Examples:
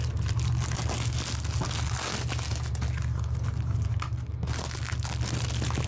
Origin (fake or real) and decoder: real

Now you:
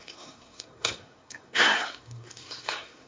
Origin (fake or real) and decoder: fake, codec, SNAC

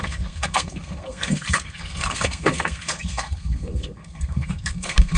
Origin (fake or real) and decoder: fake, codec, SNAC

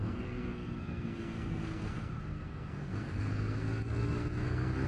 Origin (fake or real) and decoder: fake, codec, SNAC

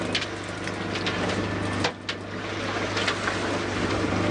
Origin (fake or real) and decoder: real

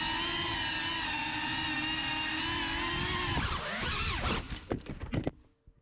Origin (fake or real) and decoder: real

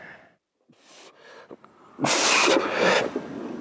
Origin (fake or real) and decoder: real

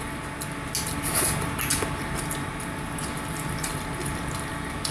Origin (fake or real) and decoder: real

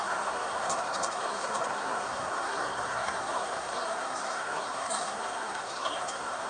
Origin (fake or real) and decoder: fake, codec, SNAC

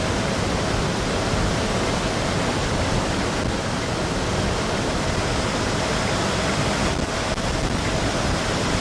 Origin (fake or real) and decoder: real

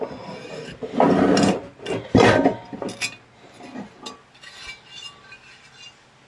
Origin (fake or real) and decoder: real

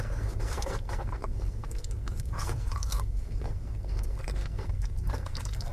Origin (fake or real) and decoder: fake, codec, SNAC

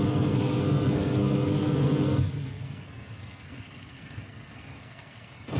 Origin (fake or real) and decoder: fake, codec, SNAC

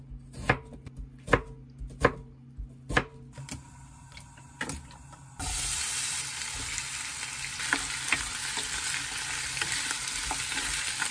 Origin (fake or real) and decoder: real